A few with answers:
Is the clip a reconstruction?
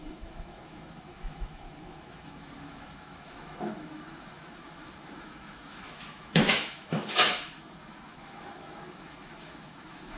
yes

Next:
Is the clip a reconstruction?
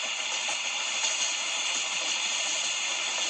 no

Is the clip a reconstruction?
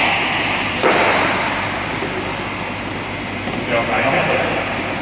no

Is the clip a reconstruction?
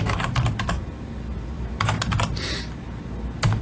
no